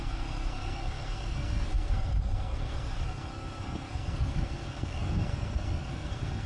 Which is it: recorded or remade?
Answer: remade